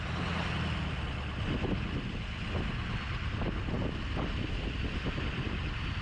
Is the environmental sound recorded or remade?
recorded